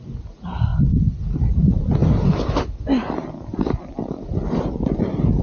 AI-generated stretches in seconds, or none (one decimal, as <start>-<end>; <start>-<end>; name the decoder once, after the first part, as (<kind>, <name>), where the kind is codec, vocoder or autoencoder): none